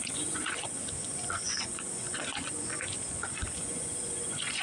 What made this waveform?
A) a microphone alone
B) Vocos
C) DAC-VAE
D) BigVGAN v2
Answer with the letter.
B